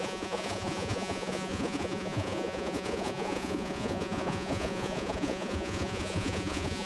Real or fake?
fake